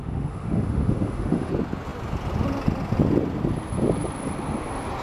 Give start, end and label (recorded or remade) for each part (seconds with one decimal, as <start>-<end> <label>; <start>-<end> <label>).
0.0-1.5 remade; 1.5-5.0 recorded